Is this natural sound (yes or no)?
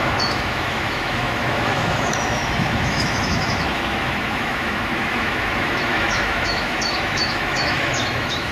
no